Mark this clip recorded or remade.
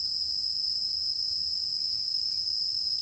recorded